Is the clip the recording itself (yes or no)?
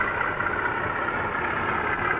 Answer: yes